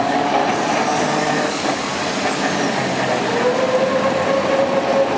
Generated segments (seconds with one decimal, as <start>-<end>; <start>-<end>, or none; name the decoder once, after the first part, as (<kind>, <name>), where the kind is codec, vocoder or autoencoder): 0.0-0.4 (codec, DAC); 1.2-1.9